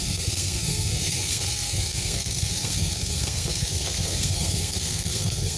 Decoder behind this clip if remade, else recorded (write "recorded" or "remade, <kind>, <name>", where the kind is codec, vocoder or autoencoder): remade, codec, SNAC